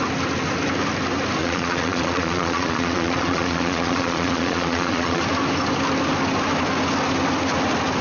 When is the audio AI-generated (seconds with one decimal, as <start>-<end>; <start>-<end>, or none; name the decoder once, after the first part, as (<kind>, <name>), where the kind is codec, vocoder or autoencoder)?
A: 1.4-5.2 (vocoder, Vocos)